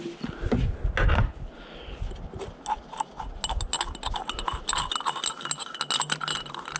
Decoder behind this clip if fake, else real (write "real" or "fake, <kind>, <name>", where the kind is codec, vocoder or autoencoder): real